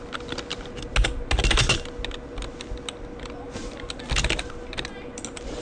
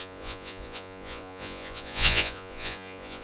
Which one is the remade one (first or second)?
second